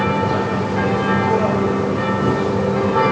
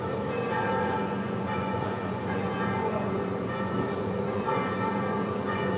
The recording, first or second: first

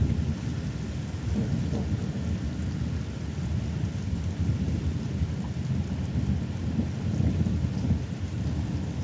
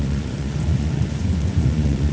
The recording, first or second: first